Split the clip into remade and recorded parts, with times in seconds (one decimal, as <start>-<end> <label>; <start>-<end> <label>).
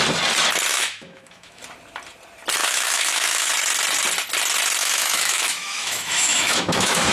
0.0-0.7 recorded; 0.7-1.6 remade; 1.6-2.6 recorded; 2.6-3.5 remade; 3.5-4.8 recorded; 4.8-7.1 remade